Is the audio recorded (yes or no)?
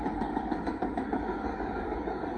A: no